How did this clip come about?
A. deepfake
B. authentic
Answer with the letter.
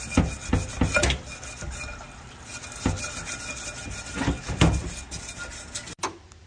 B